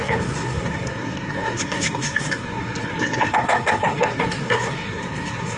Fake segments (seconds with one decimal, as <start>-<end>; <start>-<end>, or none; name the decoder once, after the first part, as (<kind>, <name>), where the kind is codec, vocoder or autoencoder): 0.0-5.6 (codec, SNAC)